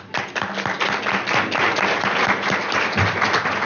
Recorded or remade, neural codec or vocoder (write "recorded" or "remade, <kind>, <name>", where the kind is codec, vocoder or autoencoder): recorded